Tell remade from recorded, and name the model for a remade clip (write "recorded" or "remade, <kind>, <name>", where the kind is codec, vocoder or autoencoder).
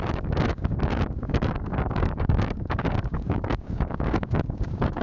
remade, codec, DAC